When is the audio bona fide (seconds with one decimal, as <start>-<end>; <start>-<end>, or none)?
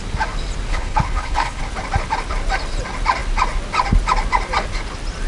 0.0-0.7; 1.6-5.3